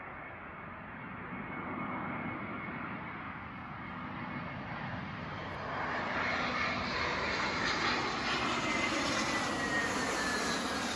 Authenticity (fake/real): real